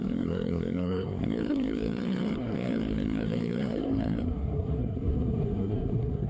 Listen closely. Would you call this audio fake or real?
fake